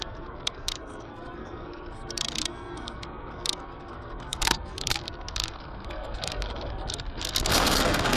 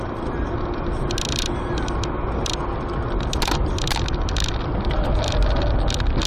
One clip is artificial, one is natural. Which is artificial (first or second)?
first